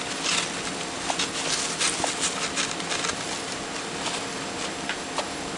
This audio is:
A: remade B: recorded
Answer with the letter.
B